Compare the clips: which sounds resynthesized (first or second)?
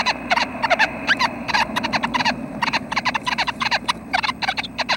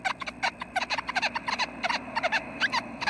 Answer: first